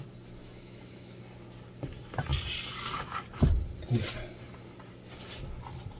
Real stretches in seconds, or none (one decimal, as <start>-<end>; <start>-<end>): 0.0-0.4; 1.2-6.0